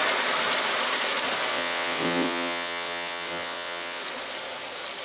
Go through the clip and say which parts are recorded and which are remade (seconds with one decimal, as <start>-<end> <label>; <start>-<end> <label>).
0.0-1.5 recorded; 1.5-4.0 remade; 4.0-5.0 recorded